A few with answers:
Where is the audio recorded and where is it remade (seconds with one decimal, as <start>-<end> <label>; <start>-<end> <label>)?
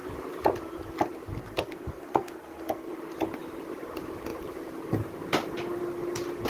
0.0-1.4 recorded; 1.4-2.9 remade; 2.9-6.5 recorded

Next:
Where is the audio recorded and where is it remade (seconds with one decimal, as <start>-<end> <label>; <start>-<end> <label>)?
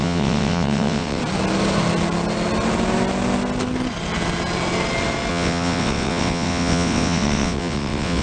0.0-1.2 remade; 1.2-5.3 recorded; 5.3-8.2 remade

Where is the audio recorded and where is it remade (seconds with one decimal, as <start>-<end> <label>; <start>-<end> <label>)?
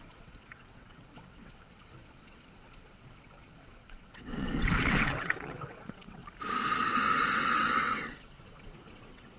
0.0-6.2 remade; 6.2-7.3 recorded; 7.3-9.4 remade